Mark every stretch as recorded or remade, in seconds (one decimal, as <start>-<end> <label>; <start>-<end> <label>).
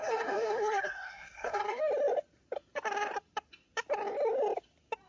0.0-1.8 remade; 1.8-5.1 recorded